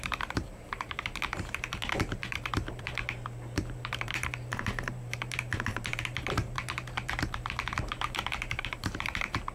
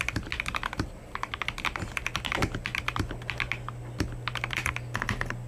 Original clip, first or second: second